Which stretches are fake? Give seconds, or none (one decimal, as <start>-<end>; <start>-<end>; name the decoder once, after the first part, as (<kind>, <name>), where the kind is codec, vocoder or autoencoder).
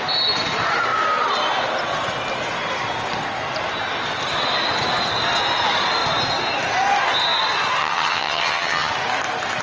7.8-8.9 (vocoder, HiFi-GAN)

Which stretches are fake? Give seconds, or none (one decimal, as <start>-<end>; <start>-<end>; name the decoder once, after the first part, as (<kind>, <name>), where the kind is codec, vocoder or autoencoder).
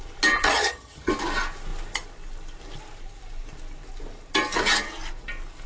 0.4-1.1 (vocoder, HiFi-GAN)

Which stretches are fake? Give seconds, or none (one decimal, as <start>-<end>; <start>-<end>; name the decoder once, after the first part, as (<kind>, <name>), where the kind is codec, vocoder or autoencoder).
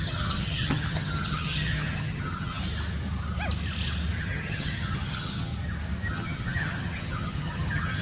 0.0-2.6 (vocoder, HiFi-GAN); 4.2-5.5; 6.1-8.0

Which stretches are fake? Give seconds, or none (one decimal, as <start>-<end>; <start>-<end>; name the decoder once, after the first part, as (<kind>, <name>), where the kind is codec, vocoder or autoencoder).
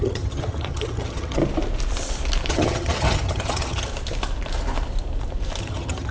0.0-1.4 (vocoder, HiFi-GAN); 2.5-3.9; 5.6-6.1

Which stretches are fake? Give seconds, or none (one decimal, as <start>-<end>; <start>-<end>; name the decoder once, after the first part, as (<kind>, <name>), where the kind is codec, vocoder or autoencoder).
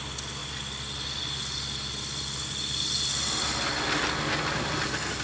none